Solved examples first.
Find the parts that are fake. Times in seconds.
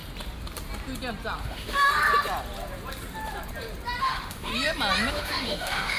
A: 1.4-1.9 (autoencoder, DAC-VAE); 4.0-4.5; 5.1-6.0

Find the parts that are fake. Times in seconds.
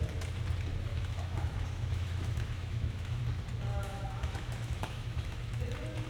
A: 0.9-3.2 (autoencoder, DAC-VAE); 3.7-5.6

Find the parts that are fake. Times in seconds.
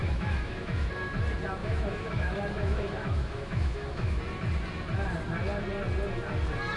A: 0.0-0.9 (autoencoder, DAC-VAE); 1.6-4.2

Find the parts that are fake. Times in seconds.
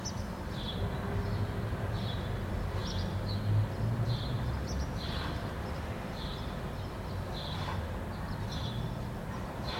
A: none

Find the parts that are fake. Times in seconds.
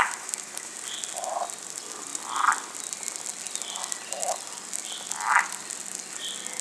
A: 0.0-0.7 (autoencoder, DAC-VAE)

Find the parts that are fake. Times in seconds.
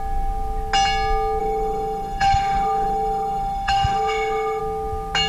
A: 1.4-4.6 (autoencoder, DAC-VAE)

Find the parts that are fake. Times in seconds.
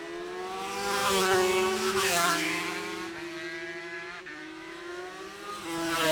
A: 1.0-2.6 (autoencoder, DAC-VAE); 3.8-5.0